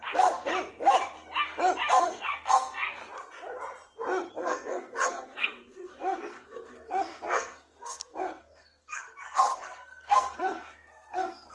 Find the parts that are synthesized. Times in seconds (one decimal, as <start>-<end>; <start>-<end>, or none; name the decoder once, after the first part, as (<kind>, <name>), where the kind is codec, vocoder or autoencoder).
0.0-0.5 (codec, SNAC); 2.0-3.0; 4.3-11.5